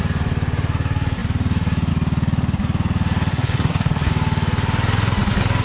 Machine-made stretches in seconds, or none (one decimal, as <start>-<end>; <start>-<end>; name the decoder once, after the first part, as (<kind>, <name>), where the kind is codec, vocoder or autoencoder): 3.3-4.1 (codec, SNAC)